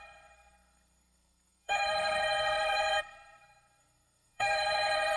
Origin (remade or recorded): remade